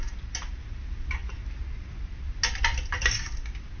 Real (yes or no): yes